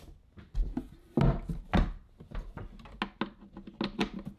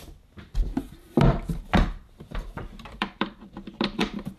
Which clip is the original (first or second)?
first